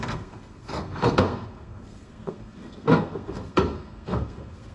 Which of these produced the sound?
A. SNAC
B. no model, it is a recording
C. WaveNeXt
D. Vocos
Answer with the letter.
A